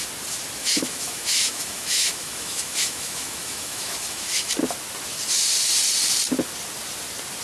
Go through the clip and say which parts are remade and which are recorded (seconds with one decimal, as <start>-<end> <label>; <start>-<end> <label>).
0.0-0.6 recorded; 0.6-4.5 remade; 4.5-7.4 recorded